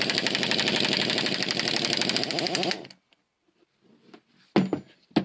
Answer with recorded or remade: recorded